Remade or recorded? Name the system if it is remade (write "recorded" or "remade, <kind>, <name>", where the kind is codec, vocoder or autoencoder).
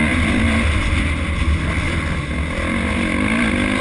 recorded